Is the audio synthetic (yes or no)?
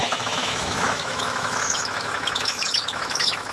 yes